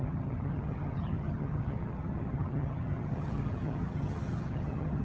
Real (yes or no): no